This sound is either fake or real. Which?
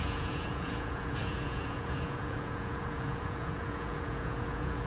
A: fake